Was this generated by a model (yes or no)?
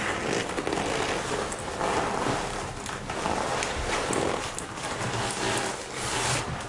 no